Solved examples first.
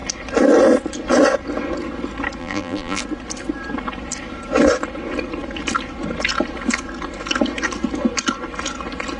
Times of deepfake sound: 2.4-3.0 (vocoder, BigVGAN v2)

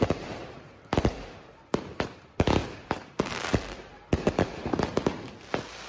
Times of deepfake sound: 0.4-1.0 (vocoder, BigVGAN v2); 2.6-4.8

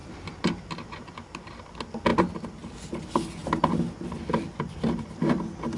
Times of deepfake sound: none

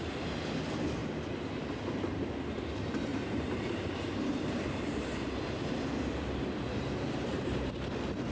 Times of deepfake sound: 3.1-7.7 (vocoder, BigVGAN v2)

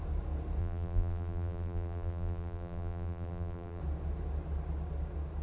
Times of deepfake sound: 0.6-3.8 (vocoder, BigVGAN v2)

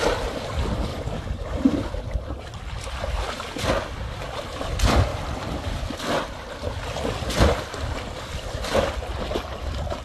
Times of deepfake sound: 0.9-3.7 (vocoder, BigVGAN v2); 5.1-8.9

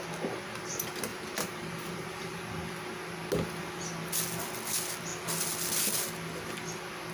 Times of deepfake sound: 1.1-2.4 (vocoder, BigVGAN v2)